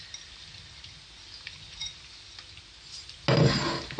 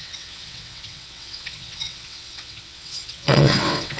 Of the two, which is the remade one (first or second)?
second